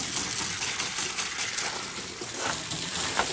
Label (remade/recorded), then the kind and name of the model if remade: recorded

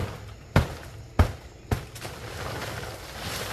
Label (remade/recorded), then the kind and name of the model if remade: recorded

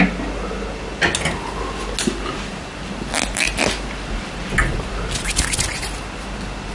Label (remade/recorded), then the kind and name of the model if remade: recorded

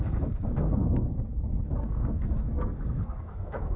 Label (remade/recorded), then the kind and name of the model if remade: remade, codec, SNAC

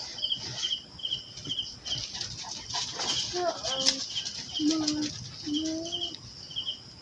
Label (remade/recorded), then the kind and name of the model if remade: recorded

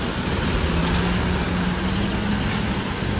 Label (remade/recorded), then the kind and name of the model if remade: recorded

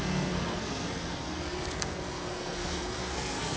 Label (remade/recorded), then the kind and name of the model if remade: remade, codec, SNAC